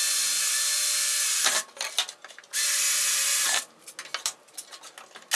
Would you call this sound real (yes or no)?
yes